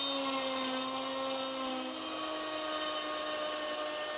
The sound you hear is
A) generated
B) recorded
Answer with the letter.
B